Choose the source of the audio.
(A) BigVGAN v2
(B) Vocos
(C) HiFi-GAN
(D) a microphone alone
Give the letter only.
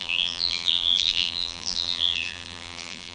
A